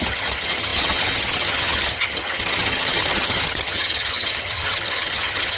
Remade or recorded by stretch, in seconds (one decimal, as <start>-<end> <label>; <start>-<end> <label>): 0.0-5.6 remade